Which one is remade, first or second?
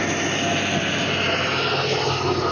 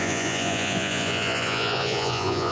second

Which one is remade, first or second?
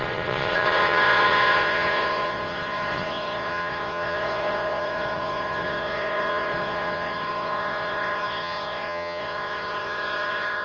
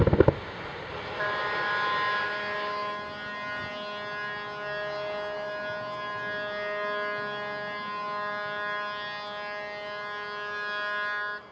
first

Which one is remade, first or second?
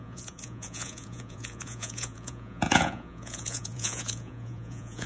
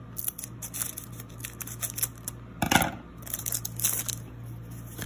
first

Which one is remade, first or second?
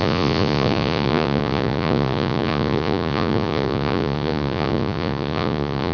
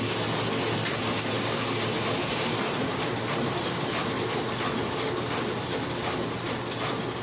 first